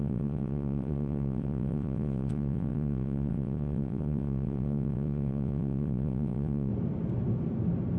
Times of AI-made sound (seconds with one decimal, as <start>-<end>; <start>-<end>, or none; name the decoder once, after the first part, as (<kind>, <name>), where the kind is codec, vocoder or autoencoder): 0.0-6.7 (vocoder, WaveNeXt)